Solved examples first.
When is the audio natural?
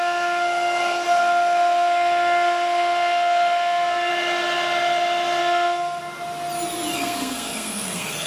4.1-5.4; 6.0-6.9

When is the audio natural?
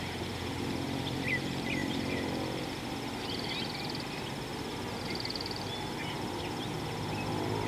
0.0-7.7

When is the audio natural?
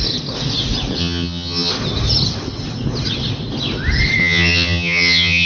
0.0-1.0; 1.7-4.2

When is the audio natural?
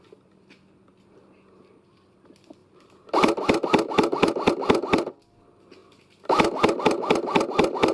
0.0-2.6; 4.5-5.8; 6.8-7.9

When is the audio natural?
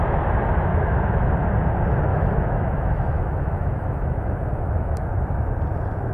0.0-0.7; 1.3-2.1; 5.1-6.1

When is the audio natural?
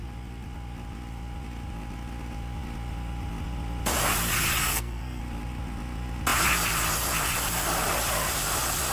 0.0-4.6; 5.2-8.9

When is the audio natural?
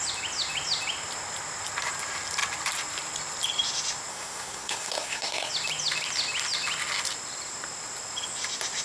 0.0-4.1; 5.5-8.8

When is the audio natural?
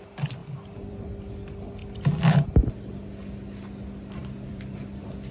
0.0-0.4; 1.1-1.8; 2.5-4.2